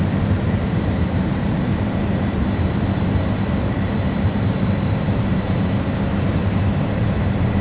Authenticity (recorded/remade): remade